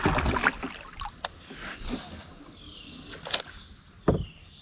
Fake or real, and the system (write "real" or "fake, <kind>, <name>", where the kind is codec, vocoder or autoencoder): real